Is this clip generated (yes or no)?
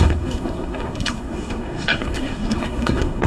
yes